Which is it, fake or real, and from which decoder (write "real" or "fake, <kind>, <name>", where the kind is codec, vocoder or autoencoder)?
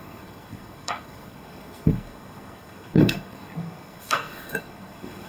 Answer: fake, codec, SNAC